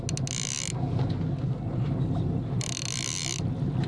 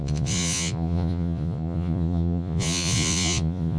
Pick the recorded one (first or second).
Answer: first